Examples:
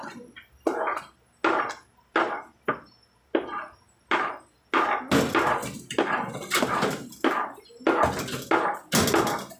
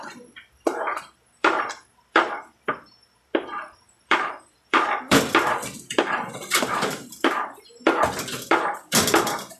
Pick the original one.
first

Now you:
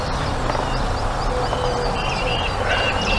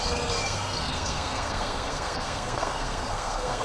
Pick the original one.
first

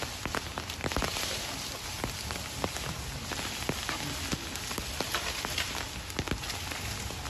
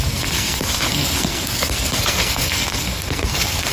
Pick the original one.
first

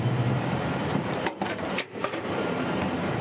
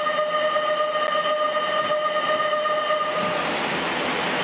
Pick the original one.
second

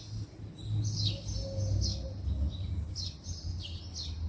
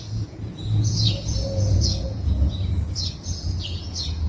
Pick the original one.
first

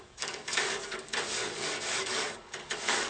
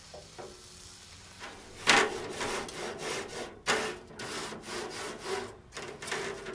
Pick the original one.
second